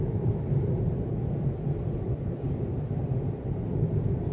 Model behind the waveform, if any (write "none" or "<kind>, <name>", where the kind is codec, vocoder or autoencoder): vocoder, BigVGAN v2